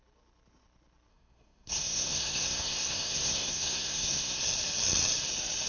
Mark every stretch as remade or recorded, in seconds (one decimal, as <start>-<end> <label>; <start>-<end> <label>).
0.0-1.1 recorded; 1.1-4.4 remade; 4.4-5.7 recorded